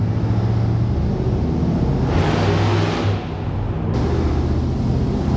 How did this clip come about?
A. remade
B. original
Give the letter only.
B